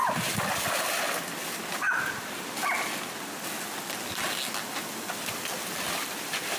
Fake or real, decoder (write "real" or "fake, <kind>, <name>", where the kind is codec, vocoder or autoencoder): real